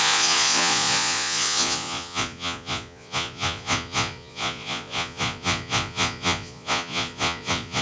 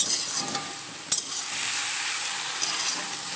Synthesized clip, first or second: first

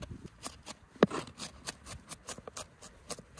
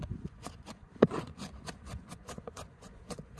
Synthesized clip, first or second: second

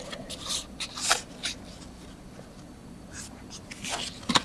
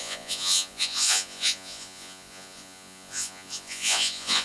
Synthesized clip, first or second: second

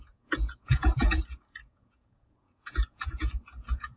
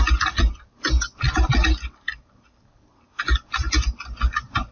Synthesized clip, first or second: first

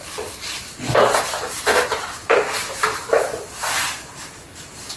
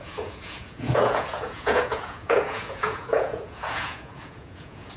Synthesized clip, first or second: second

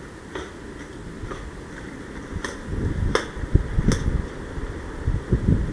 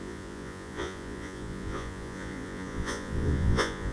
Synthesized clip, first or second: second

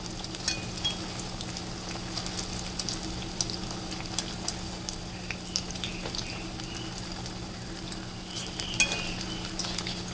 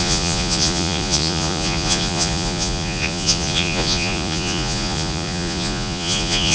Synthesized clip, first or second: second